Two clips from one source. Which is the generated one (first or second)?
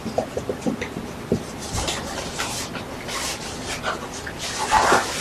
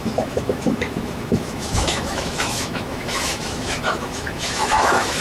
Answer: second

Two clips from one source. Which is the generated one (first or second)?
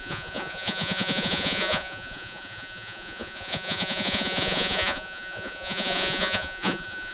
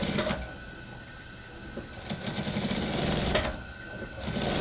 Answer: first